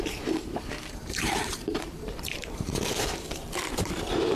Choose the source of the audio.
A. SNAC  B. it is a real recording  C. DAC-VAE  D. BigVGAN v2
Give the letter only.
D